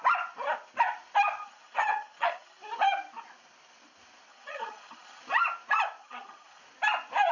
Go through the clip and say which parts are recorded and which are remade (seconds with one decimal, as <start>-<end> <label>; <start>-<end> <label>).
0.0-1.4 recorded; 1.4-2.6 remade; 2.6-4.3 recorded; 4.3-5.2 remade; 5.2-6.0 recorded; 6.0-6.6 remade; 6.6-7.3 recorded